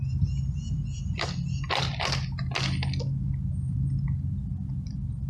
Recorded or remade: recorded